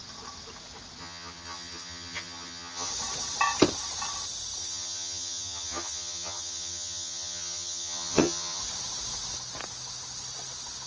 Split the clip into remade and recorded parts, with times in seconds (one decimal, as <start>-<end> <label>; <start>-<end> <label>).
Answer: 0.0-1.0 recorded; 1.0-2.9 remade; 2.9-4.6 recorded; 4.6-8.6 remade; 8.6-10.9 recorded